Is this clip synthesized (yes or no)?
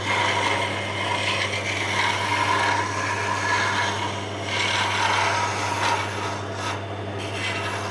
no